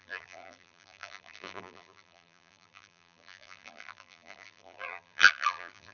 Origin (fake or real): fake